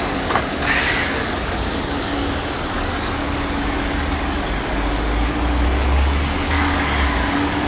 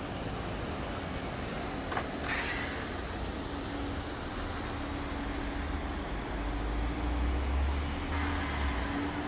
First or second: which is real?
second